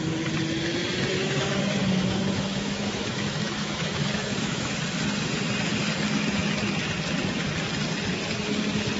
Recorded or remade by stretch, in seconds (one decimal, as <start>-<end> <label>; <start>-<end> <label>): 0.0-1.1 recorded; 1.1-4.8 remade; 4.8-9.0 recorded